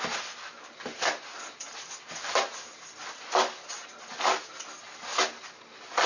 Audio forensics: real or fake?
real